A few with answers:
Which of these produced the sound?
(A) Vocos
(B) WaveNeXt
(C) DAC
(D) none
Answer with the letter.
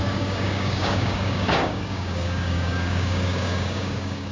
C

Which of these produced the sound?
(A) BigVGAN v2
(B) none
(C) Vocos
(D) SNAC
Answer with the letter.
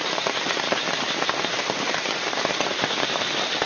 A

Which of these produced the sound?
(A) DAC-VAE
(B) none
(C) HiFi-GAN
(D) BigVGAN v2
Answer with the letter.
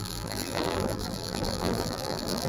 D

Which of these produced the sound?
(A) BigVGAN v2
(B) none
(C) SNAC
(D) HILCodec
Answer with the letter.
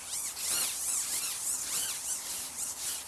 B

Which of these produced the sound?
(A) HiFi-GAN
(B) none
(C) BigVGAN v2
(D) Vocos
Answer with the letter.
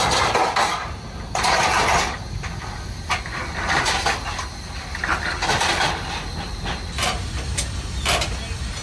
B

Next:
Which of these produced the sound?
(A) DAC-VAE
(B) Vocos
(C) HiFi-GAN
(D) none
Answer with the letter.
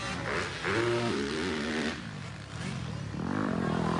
D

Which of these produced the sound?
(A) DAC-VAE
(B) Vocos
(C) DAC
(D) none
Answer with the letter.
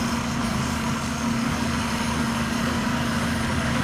C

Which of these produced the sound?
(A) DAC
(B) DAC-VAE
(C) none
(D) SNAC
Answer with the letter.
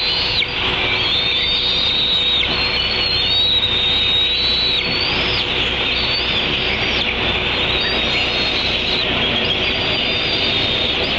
C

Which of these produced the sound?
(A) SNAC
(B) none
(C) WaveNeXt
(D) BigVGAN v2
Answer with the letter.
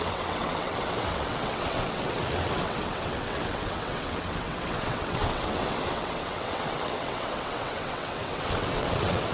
C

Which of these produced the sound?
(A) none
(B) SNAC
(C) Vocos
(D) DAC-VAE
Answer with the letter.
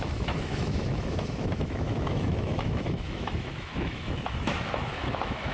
D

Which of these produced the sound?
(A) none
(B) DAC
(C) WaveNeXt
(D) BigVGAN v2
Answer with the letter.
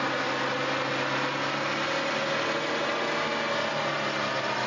A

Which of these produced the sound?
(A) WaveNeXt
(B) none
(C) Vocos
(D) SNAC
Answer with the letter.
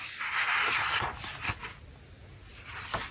B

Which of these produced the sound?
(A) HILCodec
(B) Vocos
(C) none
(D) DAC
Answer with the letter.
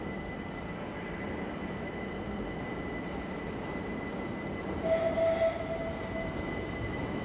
C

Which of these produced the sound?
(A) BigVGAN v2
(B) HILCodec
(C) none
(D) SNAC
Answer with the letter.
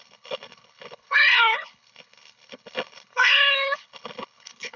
B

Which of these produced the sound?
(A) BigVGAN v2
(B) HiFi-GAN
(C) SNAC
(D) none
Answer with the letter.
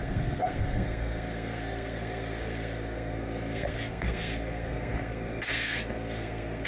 C